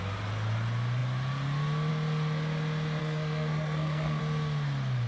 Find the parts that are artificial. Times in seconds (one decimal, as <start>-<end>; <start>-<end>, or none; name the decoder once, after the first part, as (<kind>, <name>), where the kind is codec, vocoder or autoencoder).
3.0-4.2 (codec, SNAC)